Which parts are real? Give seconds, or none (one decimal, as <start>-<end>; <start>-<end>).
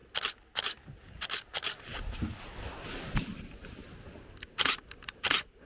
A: 3.8-4.4